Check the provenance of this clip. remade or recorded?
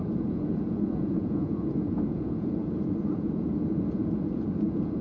remade